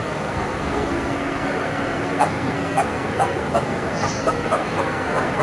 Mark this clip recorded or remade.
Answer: remade